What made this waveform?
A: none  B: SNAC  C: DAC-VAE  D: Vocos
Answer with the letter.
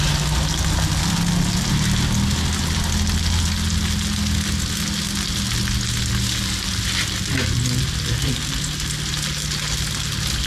A